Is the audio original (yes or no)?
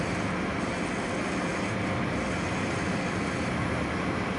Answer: yes